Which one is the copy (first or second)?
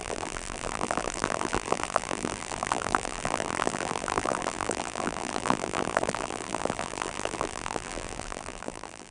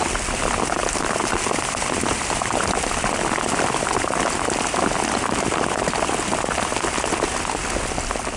first